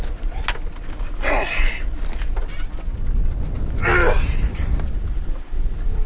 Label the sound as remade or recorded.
recorded